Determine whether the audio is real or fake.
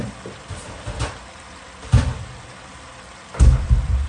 fake